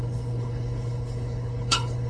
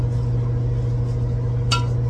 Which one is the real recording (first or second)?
second